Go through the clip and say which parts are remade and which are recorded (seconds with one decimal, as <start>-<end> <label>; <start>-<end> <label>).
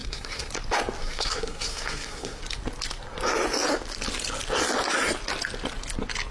0.0-0.5 remade; 0.5-1.0 recorded; 1.0-2.4 remade; 2.4-6.3 recorded